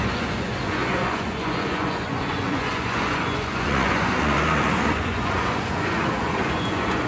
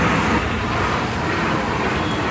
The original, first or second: second